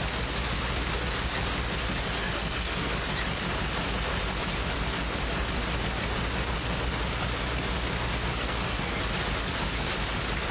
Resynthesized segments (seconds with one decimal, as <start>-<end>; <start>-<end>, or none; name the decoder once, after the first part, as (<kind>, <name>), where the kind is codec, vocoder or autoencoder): 2.2-3.0 (codec, SNAC); 8.3-9.0